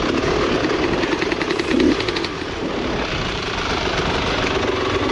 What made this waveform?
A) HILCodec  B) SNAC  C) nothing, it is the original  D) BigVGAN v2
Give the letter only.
C